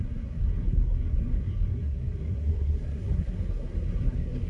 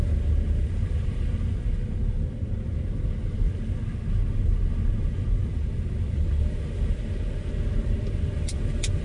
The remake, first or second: first